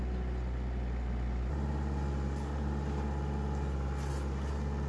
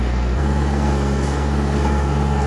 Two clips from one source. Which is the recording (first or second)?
first